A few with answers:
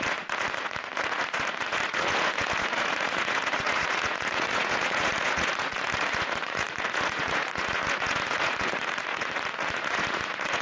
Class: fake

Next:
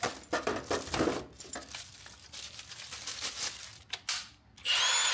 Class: real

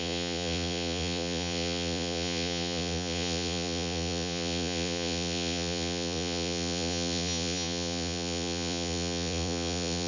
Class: fake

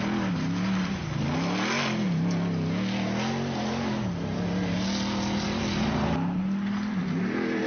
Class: real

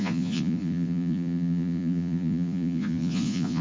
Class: fake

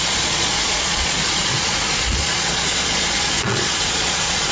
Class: fake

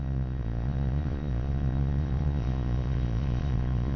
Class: fake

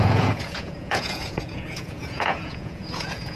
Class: fake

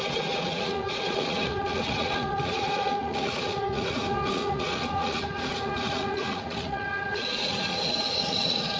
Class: fake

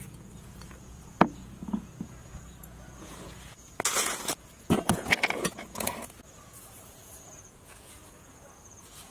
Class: fake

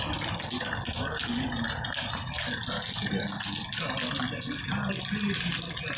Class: real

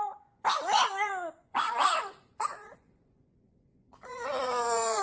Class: fake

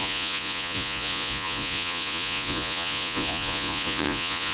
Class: fake